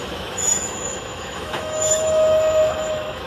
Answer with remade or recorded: remade